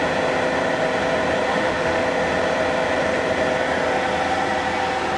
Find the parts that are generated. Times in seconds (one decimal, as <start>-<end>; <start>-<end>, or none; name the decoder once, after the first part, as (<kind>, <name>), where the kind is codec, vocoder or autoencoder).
1.5-2.0 (autoencoder, DAC-VAE)